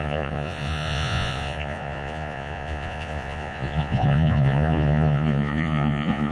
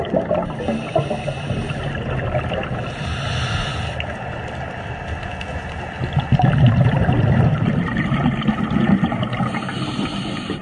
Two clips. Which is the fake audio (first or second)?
first